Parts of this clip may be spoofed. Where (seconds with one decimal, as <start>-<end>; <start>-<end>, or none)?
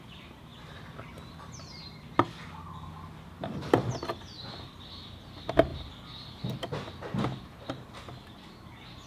none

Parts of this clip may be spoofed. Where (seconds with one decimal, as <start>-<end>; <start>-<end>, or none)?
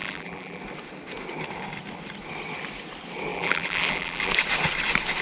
0.0-0.6; 3.3-4.3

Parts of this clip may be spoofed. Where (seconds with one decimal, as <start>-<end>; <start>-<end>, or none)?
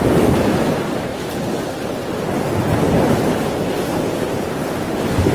0.0-1.1; 4.3-5.3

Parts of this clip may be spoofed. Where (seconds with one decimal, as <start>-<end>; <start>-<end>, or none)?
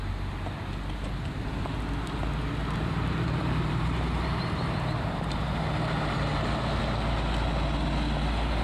2.6-6.8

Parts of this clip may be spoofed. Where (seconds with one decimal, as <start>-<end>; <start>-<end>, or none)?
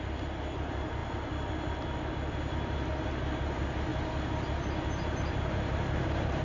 none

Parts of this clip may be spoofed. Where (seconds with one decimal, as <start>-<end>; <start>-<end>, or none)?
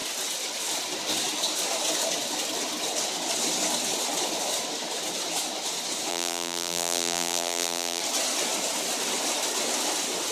6.1-8.0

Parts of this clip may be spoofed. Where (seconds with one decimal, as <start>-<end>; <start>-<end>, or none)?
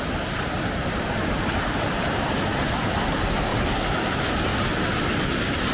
0.0-3.5; 4.0-4.5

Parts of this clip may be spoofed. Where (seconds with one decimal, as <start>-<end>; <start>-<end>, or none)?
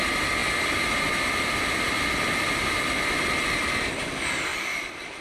4.5-5.2